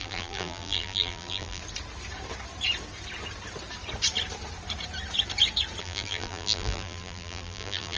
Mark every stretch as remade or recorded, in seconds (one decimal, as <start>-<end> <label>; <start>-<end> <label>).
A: 0.0-1.6 remade; 1.6-5.8 recorded; 5.8-8.0 remade